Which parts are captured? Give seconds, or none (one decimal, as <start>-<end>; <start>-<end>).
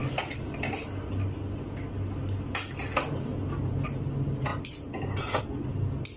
0.0-6.2